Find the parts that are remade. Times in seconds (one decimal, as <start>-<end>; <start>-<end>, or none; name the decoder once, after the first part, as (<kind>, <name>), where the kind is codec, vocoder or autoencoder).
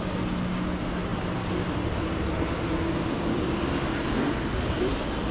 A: 1.1-4.3 (vocoder, BigVGAN v2)